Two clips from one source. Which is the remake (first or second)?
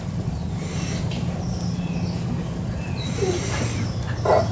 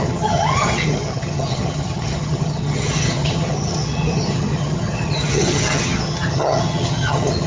second